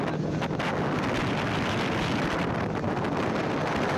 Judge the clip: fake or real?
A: real